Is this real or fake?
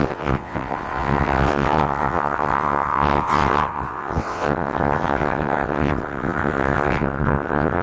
fake